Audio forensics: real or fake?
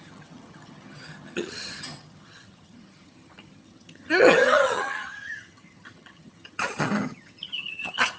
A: fake